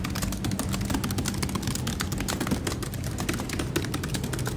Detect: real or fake real